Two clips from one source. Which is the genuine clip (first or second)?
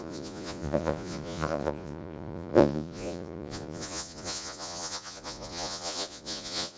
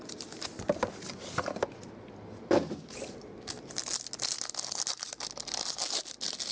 second